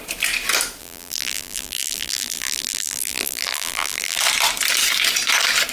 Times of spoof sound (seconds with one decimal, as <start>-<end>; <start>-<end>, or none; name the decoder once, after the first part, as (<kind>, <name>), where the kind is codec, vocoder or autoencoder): 0.8-4.2 (vocoder, BigVGAN v2)